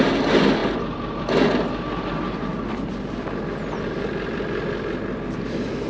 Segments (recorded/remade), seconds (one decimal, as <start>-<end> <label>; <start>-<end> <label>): 0.0-5.9 recorded